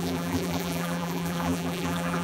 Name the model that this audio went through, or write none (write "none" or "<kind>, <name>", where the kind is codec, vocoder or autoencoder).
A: vocoder, BigVGAN v2